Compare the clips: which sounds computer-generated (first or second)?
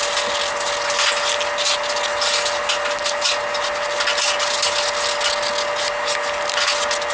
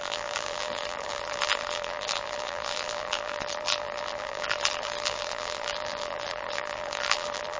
second